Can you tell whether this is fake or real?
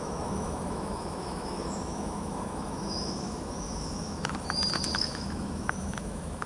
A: fake